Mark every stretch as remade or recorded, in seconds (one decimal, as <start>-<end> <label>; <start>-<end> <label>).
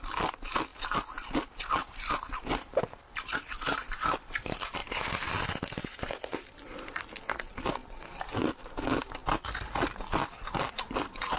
0.0-7.8 remade; 7.8-8.5 recorded; 8.5-9.2 remade; 9.2-10.5 recorded; 10.5-11.4 remade